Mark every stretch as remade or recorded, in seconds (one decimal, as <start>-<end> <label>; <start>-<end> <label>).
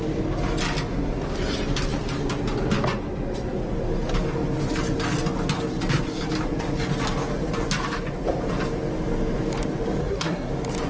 0.0-10.0 recorded; 10.0-10.5 remade; 10.5-10.9 recorded